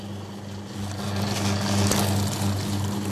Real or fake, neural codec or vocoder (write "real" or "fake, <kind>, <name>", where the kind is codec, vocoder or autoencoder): real